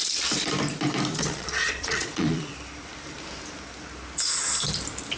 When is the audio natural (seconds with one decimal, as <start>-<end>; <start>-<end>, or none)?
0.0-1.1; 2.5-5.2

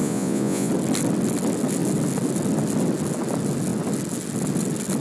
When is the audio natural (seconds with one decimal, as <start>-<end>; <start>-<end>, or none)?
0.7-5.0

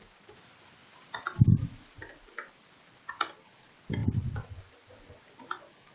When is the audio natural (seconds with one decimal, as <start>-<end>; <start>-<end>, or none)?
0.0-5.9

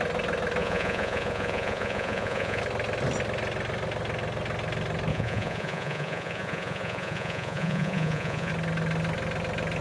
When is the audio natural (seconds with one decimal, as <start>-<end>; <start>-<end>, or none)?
0.0-0.6; 2.6-5.1; 8.5-9.8